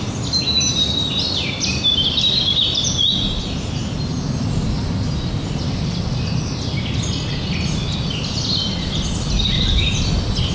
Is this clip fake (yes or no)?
no